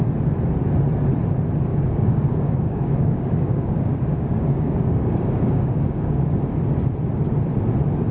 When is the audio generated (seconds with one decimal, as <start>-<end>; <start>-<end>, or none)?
1.7-6.4